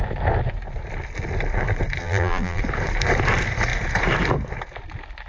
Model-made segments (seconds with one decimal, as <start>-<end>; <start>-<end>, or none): 2.0-2.6